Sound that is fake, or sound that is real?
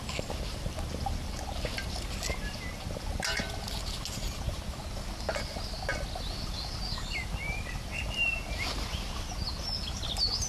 real